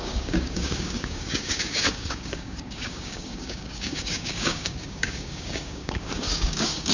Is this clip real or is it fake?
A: fake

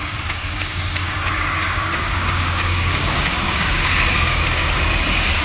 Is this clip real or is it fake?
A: fake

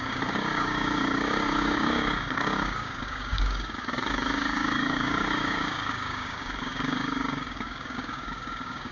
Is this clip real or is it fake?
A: fake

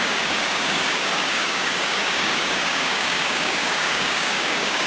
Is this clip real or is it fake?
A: fake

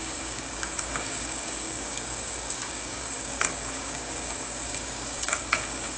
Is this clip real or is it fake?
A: fake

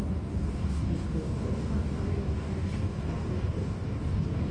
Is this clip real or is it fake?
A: fake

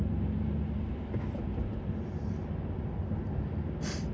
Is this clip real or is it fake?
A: real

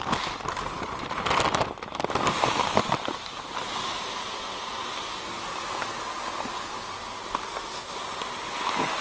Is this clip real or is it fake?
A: real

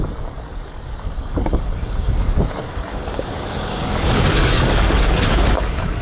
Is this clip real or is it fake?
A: fake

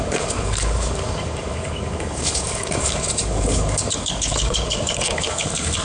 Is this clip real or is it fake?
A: fake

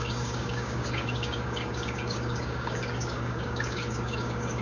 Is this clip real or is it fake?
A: fake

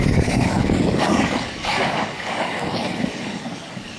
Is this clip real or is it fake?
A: fake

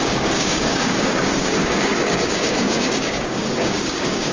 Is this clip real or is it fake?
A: fake